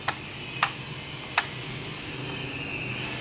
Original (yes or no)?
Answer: yes